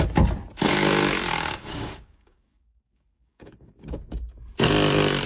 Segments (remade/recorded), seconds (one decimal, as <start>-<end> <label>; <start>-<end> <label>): 0.0-1.3 recorded; 1.3-4.0 remade; 4.0-5.3 recorded